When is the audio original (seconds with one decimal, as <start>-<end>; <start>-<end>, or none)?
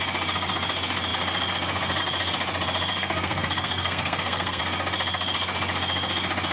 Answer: 0.0-2.9; 4.6-6.5